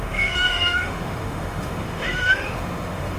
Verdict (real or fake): fake